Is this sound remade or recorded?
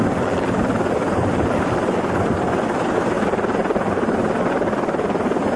recorded